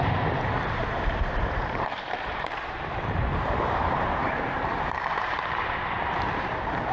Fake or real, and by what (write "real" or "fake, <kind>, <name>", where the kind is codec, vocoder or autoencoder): fake, vocoder, BigVGAN v2